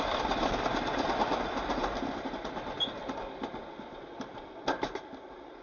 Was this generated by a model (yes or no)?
no